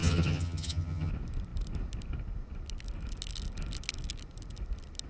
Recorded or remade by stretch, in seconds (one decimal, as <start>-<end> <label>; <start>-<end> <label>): 0.0-1.1 remade; 1.1-5.1 recorded